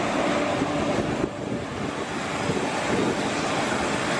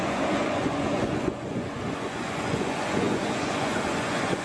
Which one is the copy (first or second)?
second